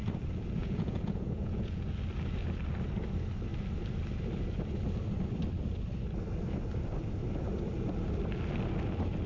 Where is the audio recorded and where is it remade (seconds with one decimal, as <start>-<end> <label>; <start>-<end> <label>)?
0.0-0.6 recorded; 0.6-1.9 remade; 1.9-9.3 recorded

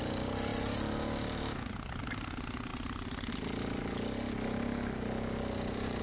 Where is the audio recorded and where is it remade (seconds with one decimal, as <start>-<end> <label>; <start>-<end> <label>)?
0.0-6.0 recorded

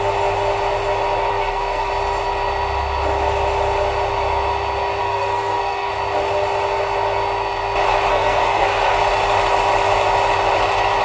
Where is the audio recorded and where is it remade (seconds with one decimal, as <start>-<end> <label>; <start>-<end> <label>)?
0.0-1.3 recorded; 1.3-1.9 remade; 1.9-5.0 recorded; 5.0-5.9 remade; 5.9-8.1 recorded; 8.1-9.0 remade; 9.0-11.0 recorded

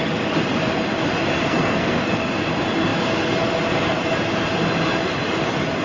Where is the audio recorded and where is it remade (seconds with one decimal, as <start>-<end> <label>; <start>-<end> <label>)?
0.0-1.4 recorded; 1.4-2.2 remade; 2.2-5.8 recorded